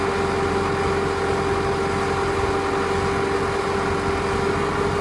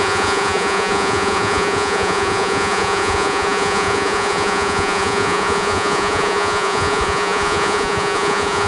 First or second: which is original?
first